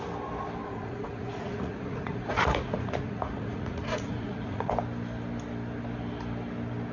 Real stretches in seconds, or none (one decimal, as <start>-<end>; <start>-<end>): 0.0-0.6; 4.7-6.9